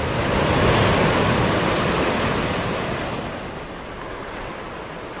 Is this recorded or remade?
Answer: recorded